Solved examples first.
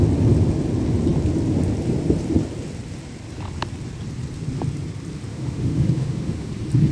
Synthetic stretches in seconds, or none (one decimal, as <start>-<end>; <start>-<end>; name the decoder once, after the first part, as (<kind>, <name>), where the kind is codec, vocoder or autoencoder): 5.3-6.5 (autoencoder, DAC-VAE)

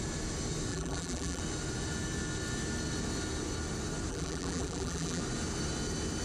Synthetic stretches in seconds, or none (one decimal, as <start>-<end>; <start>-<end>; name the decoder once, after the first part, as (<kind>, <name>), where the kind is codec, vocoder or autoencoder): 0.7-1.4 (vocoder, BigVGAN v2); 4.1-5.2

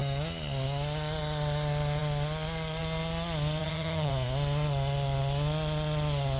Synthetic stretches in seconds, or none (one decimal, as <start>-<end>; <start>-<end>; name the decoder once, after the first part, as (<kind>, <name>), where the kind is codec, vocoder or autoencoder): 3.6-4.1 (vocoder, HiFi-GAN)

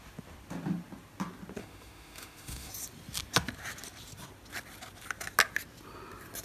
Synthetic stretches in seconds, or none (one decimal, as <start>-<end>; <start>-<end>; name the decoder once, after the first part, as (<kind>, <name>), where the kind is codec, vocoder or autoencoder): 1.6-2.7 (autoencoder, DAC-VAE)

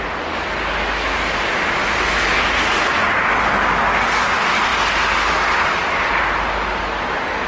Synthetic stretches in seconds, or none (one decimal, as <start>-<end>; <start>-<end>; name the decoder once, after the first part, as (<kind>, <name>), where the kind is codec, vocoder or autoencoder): none

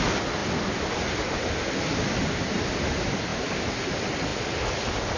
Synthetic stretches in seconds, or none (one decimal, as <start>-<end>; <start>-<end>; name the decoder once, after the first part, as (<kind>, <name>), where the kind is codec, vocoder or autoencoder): none

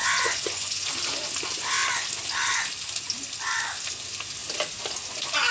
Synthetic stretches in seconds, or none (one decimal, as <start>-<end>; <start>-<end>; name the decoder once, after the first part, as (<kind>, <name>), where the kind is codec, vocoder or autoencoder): 0.0-0.9 (vocoder, Vocos)

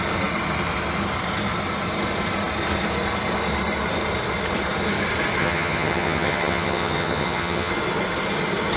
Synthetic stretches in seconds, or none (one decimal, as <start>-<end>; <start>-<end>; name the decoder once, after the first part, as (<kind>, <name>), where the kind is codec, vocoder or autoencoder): 5.4-7.7 (vocoder, HiFi-GAN)